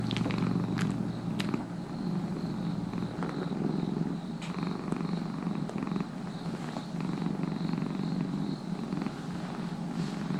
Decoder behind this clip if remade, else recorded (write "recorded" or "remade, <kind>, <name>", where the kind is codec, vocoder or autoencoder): recorded